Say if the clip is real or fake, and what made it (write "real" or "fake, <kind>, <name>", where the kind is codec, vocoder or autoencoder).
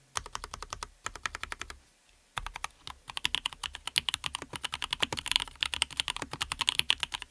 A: real